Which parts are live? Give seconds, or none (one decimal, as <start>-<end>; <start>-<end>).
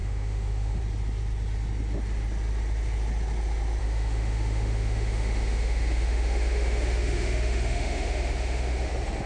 0.8-3.8; 8.9-9.3